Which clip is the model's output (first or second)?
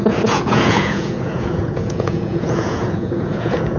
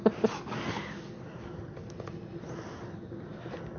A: first